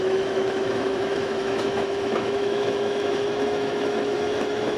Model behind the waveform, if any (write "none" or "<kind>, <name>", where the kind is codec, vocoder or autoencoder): autoencoder, DAC-VAE